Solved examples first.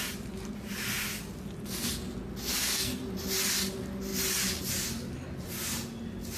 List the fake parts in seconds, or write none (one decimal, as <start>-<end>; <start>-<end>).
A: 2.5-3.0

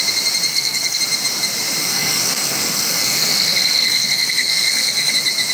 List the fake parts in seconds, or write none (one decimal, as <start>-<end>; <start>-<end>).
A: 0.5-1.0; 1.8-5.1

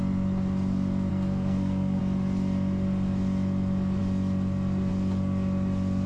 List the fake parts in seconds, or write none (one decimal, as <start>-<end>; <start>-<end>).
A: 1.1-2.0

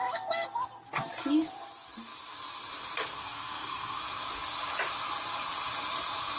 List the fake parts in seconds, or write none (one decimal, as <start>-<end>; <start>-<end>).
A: 3.1-4.0

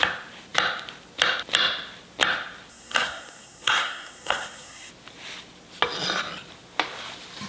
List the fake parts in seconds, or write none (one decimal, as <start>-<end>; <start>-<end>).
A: 2.7-4.9

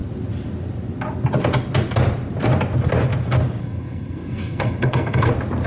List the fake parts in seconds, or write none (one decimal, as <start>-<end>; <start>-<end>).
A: 3.6-5.3